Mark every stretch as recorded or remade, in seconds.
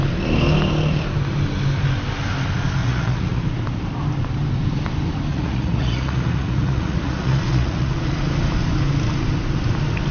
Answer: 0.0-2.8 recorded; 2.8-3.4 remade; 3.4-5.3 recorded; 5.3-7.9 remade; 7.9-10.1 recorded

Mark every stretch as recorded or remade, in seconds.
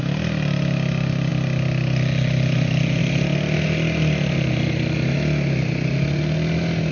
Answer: 0.0-6.9 recorded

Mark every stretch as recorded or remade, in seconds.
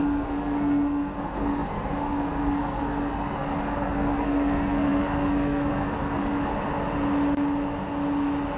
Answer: 0.0-6.5 remade; 6.5-8.6 recorded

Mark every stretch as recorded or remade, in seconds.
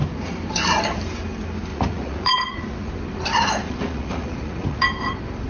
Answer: 0.0-1.7 recorded; 1.7-2.9 remade; 2.9-3.6 recorded; 3.6-4.8 remade; 4.8-5.5 recorded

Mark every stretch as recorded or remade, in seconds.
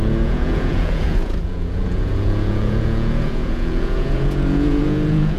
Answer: 0.0-5.4 remade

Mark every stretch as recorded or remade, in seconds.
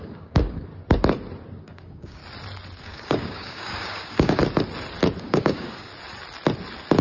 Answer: 0.0-0.7 remade; 0.7-1.6 recorded; 1.6-2.2 remade; 2.2-2.8 recorded; 2.8-4.4 remade; 4.4-5.2 recorded; 5.2-5.9 remade; 5.9-7.0 recorded